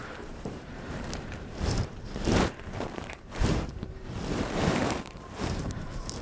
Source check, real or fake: fake